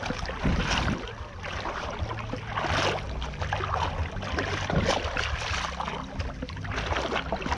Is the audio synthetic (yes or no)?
no